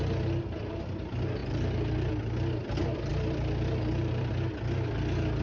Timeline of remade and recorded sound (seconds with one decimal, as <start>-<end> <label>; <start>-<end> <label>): 0.0-1.4 recorded; 1.4-2.1 remade; 2.1-3.1 recorded; 3.1-4.3 remade; 4.3-5.4 recorded